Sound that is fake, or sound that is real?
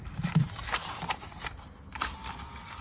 real